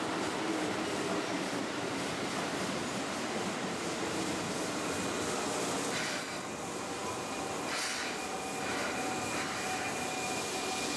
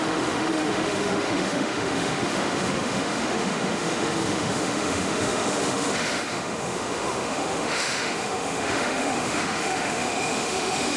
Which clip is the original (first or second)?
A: first